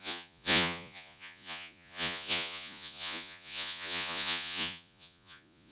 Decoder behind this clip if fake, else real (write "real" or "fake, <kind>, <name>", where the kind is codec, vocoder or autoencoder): fake, vocoder, Vocos